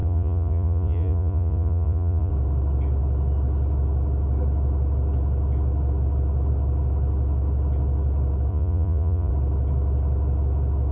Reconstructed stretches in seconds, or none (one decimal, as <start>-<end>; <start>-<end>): 0.0-2.3; 8.5-9.3